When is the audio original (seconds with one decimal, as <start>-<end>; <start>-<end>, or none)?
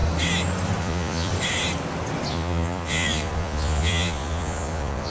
0.0-0.8; 1.3-2.3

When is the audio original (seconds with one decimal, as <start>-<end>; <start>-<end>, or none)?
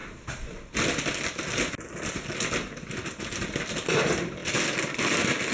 0.0-5.5